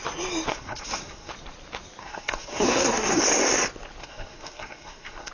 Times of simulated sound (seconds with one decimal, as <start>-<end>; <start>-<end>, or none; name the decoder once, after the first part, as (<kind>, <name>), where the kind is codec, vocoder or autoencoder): 0.5-1.3 (codec, SNAC); 2.0-3.2; 4.0-5.3